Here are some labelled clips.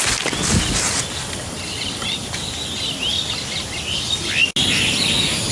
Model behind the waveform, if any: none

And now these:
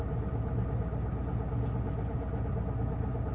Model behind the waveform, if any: none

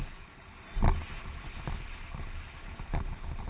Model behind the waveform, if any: none